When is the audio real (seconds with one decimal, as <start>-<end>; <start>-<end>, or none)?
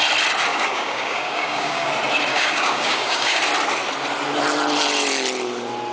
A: 0.0-0.5; 1.9-2.3; 3.4-5.9